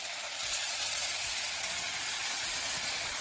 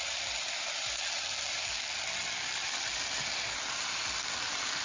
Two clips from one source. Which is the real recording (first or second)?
second